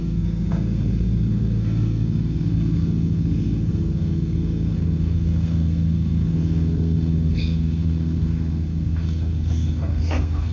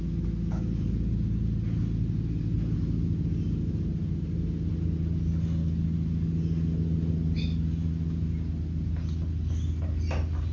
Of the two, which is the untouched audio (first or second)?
second